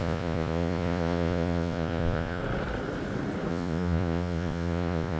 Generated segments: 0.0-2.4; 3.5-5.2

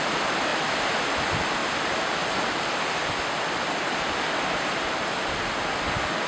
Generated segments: none

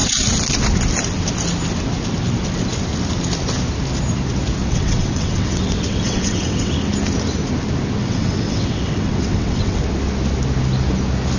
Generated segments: 4.6-6.8; 8.0-9.8

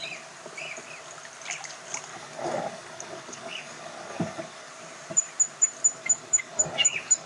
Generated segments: 2.1-4.7; 6.0-7.3

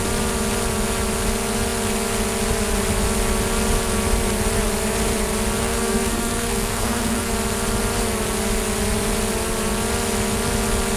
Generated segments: 5.6-7.3